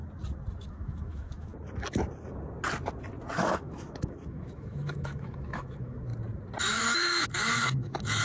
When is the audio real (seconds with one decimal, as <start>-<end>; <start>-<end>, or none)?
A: 0.0-0.6; 1.5-3.3; 6.1-6.6